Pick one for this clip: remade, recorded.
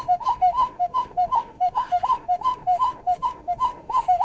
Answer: remade